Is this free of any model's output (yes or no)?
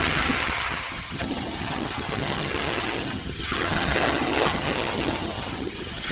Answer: no